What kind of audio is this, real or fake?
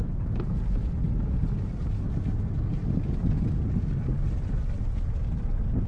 real